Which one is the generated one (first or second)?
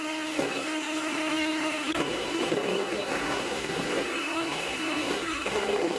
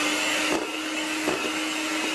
first